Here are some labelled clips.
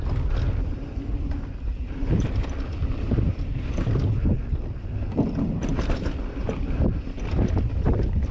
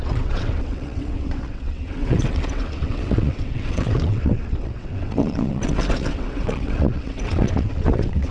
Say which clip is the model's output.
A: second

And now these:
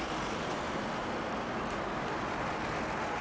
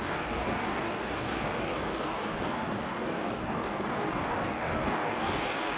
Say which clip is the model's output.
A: second